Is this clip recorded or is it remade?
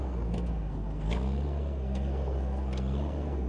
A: remade